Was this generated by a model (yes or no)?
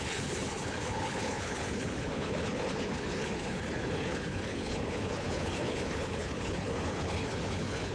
yes